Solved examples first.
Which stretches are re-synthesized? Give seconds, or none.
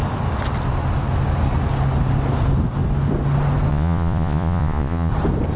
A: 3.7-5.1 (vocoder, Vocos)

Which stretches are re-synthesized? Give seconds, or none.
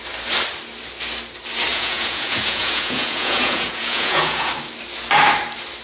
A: 1.7-4.5 (vocoder, Vocos)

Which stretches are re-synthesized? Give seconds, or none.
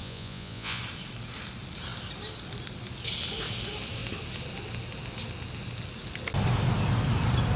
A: 0.0-0.8 (vocoder, Vocos)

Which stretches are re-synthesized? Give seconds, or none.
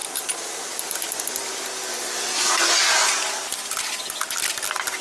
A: none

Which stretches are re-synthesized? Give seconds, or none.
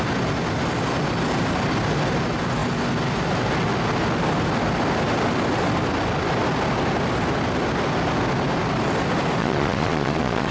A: 9.4-10.5 (vocoder, Vocos)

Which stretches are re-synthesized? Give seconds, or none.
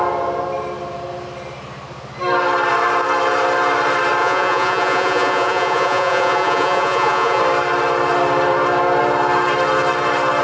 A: 4.2-7.4 (vocoder, Vocos)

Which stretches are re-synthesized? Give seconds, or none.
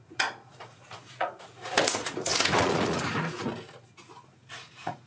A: 0.0-3.5 (vocoder, Vocos); 4.5-5.1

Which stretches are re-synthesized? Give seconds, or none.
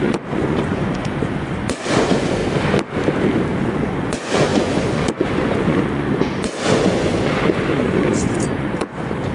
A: 0.0-2.4 (vocoder, Vocos); 3.6-9.3